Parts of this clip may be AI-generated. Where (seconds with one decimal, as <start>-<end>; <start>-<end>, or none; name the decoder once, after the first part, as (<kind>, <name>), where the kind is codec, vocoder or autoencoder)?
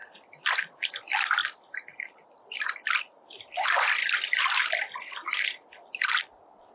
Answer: 0.0-0.8 (vocoder, BigVGAN v2); 1.4-3.0; 4.0-6.2